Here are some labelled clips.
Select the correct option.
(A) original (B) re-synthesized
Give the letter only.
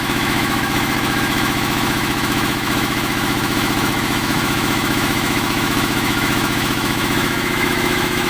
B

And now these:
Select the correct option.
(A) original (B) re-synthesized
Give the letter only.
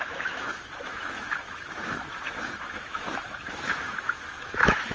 B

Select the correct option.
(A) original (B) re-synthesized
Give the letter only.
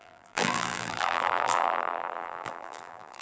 B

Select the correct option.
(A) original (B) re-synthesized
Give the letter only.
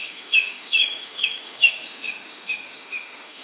B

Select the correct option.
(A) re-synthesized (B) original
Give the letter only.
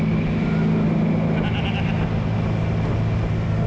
B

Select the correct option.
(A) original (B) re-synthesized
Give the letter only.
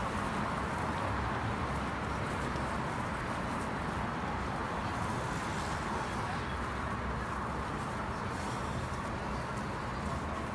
A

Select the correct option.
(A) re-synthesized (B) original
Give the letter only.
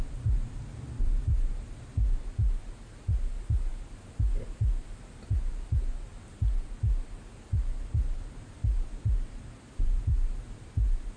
B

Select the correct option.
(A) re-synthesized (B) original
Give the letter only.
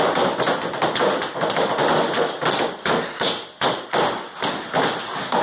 B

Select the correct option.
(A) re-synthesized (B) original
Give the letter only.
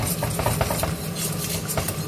B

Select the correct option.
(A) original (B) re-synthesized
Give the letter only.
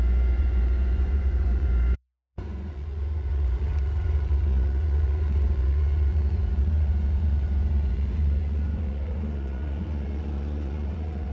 B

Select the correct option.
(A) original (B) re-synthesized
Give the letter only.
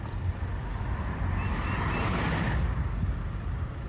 A